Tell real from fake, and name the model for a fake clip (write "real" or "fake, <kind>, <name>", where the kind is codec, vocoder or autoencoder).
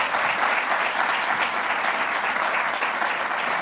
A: real